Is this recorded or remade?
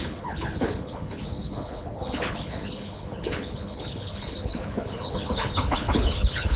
remade